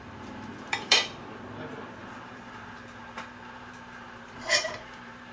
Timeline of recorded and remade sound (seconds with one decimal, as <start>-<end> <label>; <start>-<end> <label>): 0.0-1.0 remade; 1.0-2.0 recorded; 2.0-5.3 remade